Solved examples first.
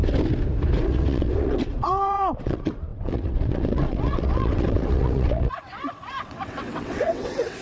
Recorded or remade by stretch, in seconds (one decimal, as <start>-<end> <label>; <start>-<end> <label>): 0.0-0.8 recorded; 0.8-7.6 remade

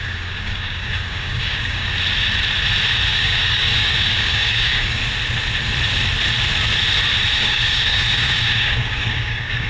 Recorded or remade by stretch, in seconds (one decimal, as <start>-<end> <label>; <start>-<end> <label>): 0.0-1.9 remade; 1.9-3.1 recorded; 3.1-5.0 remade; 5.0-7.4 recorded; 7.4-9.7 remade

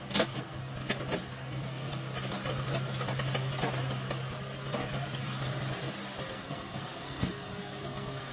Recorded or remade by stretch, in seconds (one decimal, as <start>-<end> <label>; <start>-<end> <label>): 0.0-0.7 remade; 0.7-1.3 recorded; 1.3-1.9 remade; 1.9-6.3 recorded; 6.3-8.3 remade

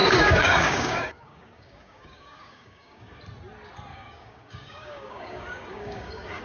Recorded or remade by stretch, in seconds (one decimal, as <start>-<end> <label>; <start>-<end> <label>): 0.0-3.2 remade; 3.2-3.9 recorded; 3.9-6.4 remade

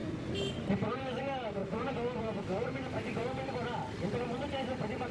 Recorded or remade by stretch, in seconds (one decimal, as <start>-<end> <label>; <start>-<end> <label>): 0.0-5.1 recorded

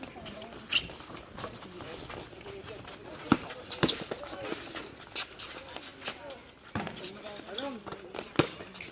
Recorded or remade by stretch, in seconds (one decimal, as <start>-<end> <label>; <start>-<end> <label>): 0.0-8.9 recorded

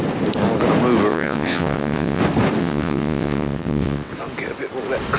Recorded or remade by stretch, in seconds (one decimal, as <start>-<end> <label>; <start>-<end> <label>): 0.0-1.1 recorded; 1.1-2.2 remade; 2.2-2.6 recorded; 2.6-4.1 remade; 4.1-5.2 recorded